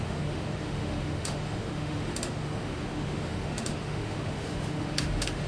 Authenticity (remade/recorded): remade